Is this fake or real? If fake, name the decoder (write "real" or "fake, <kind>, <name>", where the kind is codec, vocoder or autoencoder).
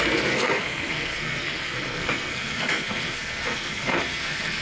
fake, codec, SNAC